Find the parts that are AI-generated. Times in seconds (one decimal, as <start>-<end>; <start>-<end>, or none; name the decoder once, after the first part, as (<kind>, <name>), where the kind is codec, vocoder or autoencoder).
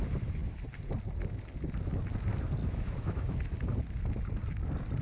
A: 2.6-3.3 (autoencoder, DAC-VAE)